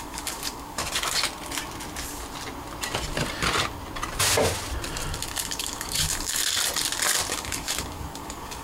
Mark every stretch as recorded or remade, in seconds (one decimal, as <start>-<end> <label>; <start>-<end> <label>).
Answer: 0.0-0.8 remade; 0.8-5.4 recorded; 5.4-6.4 remade; 6.4-7.3 recorded; 7.3-8.6 remade

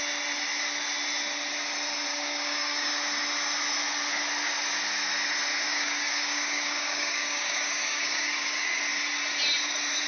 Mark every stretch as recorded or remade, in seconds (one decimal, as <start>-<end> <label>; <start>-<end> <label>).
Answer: 0.0-2.1 recorded; 2.1-2.9 remade; 2.9-5.7 recorded; 5.7-8.8 remade; 8.8-10.1 recorded

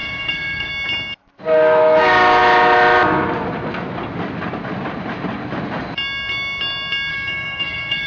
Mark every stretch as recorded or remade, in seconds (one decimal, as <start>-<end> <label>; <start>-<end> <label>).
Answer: 0.0-0.7 remade; 0.7-7.1 recorded; 7.1-8.1 remade